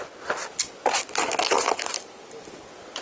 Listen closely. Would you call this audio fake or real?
real